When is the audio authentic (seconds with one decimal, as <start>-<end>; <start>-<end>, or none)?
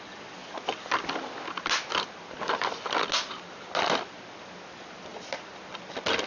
0.0-6.3